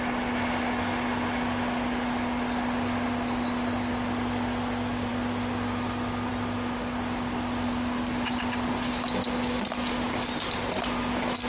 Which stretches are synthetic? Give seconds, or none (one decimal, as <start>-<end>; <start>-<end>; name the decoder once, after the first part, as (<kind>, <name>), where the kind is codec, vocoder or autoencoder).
none